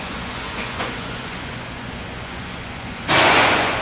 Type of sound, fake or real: fake